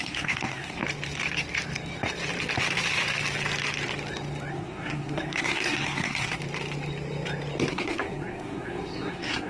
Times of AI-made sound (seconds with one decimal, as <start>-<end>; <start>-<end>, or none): 0.0-0.8; 4.5-6.4; 7.7-9.5